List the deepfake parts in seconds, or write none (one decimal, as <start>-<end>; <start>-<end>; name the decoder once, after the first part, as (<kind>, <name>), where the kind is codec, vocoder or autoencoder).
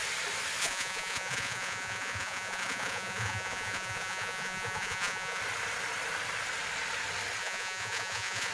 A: 0.6-5.4 (vocoder, Vocos); 7.4-8.5